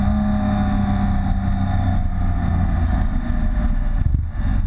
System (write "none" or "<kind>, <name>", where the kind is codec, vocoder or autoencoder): none